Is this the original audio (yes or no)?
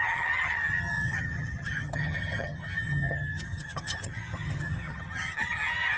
no